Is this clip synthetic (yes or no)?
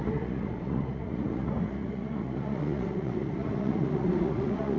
yes